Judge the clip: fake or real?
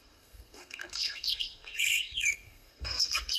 fake